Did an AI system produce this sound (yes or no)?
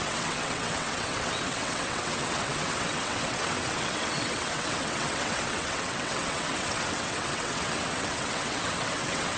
yes